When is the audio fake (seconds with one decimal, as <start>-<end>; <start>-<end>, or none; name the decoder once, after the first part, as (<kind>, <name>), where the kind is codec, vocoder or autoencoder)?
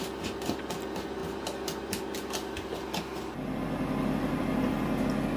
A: none